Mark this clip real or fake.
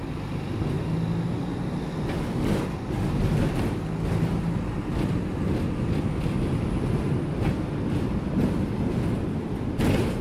real